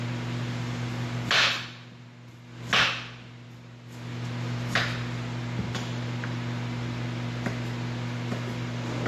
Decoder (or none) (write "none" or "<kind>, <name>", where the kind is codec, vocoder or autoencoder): none